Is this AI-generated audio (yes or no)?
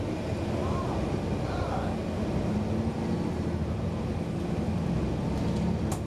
no